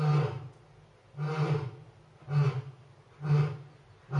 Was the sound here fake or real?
real